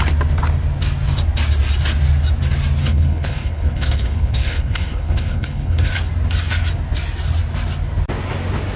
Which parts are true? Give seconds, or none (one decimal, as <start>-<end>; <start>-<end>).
0.0-2.8; 5.9-8.8